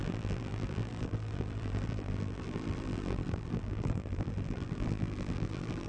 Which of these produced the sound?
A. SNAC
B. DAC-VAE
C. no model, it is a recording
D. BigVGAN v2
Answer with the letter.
D